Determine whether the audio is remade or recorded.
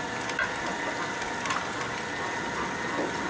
recorded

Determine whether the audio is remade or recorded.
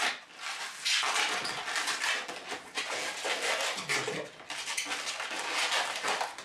recorded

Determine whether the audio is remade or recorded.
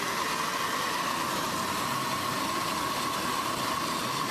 recorded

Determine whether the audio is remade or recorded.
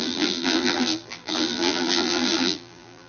remade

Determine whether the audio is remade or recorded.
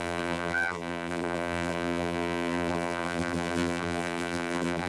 remade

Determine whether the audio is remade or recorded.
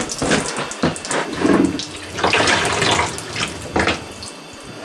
recorded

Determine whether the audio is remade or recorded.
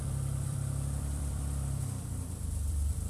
remade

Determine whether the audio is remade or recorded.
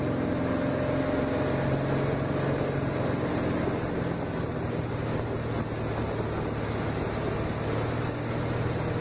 recorded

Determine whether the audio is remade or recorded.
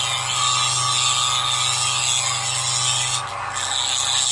recorded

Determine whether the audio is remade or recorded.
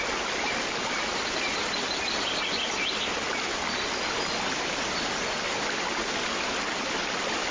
recorded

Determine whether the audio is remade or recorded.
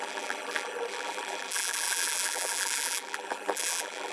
remade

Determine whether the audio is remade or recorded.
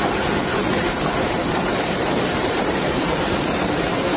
remade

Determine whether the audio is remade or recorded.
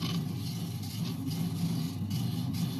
recorded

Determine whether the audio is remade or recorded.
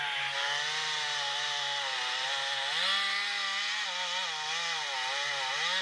recorded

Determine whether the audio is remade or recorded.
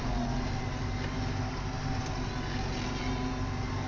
recorded